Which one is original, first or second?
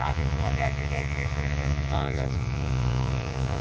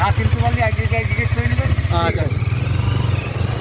second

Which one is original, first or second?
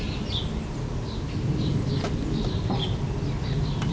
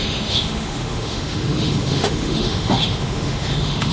first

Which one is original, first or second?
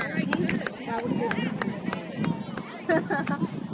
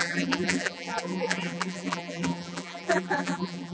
first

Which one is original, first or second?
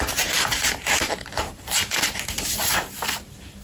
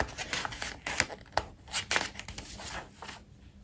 second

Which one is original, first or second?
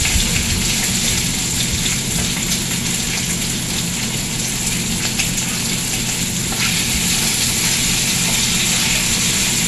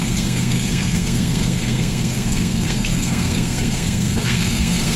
first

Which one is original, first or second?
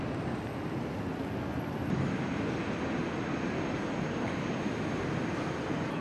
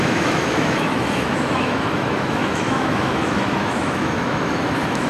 first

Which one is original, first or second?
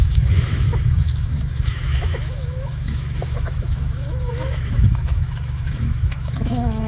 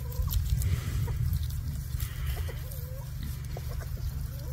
second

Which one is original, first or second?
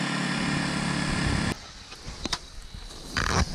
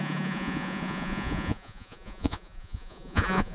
first